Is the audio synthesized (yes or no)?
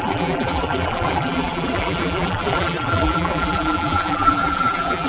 yes